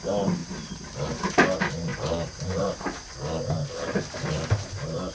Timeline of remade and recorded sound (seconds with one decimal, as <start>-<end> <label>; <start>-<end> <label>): 0.0-0.4 recorded; 0.4-1.1 remade; 1.1-1.9 recorded; 1.9-3.1 remade; 3.1-5.1 recorded